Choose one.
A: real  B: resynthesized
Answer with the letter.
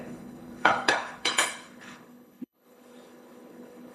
B